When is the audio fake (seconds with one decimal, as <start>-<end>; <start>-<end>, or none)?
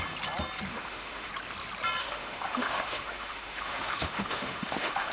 0.7-1.3; 2.0-5.1